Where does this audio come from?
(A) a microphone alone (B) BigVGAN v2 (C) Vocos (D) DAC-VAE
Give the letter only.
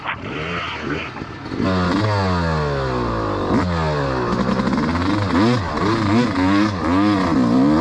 A